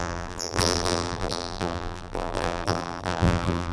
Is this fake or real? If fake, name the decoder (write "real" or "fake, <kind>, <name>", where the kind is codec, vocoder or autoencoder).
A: fake, vocoder, BigVGAN v2